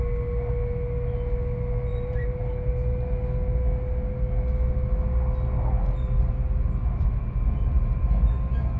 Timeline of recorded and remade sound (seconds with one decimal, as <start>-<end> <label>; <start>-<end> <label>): 0.0-1.9 recorded; 1.9-2.4 remade; 2.4-6.8 recorded; 6.8-8.0 remade; 8.0-8.8 recorded